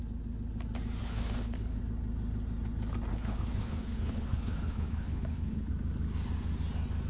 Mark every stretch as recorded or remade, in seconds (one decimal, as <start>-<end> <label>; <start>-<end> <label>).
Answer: 0.0-1.0 recorded; 1.0-1.8 remade; 1.8-3.1 recorded; 3.1-5.7 remade; 5.7-7.1 recorded